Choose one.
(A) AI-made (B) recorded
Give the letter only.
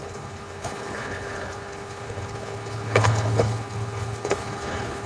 A